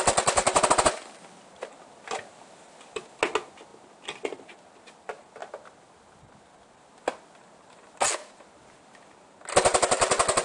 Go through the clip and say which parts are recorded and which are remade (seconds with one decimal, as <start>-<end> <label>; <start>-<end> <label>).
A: 0.0-10.4 recorded